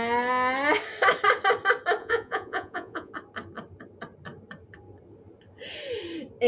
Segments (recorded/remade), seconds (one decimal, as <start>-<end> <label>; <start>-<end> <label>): 0.0-2.0 recorded; 2.0-3.1 remade; 3.1-6.5 recorded